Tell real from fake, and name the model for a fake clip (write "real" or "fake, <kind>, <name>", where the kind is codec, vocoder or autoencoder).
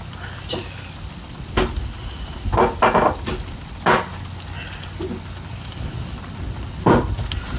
real